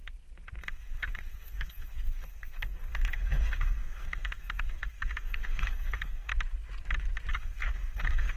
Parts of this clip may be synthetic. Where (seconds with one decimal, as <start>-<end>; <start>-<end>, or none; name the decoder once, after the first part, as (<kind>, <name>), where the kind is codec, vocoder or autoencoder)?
0.6-6.3 (codec, SNAC); 7.3-8.4